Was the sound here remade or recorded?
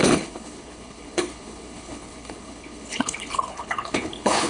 remade